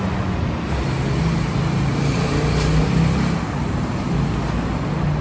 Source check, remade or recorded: recorded